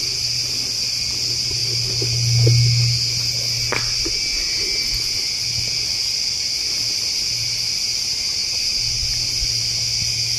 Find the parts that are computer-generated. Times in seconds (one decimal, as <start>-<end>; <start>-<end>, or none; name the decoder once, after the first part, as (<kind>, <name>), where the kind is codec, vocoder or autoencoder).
0.0-1.6 (vocoder, BigVGAN v2); 5.9-8.4